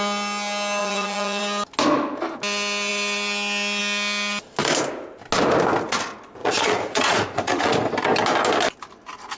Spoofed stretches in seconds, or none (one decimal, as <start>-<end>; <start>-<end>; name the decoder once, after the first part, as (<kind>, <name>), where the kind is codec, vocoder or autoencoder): 0.8-1.4 (vocoder, Vocos); 6.4-7.7